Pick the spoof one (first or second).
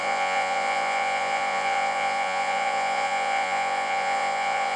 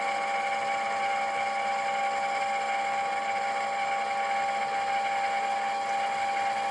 first